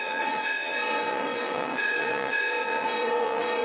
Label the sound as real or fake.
fake